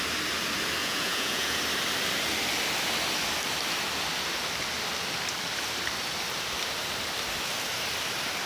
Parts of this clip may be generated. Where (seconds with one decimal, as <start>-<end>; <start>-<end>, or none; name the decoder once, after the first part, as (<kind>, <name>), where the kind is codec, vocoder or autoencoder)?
0.8-1.6 (vocoder, Vocos)